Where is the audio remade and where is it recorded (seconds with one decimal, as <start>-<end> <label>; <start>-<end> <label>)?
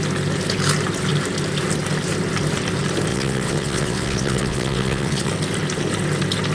0.0-3.1 recorded; 3.1-5.3 remade; 5.3-6.5 recorded